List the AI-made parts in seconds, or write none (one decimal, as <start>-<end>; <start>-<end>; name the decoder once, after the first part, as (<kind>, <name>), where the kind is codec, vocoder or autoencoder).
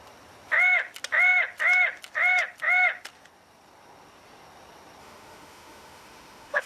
5.0-6.7 (autoencoder, DAC-VAE)